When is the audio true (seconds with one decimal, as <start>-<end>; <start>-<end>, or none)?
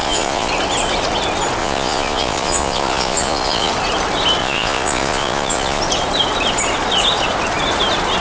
0.5-1.6; 3.7-4.4; 5.8-8.2